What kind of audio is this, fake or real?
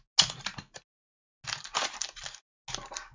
real